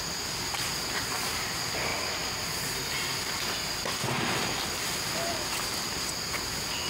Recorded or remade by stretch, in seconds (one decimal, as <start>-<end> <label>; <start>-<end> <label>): 0.0-6.9 recorded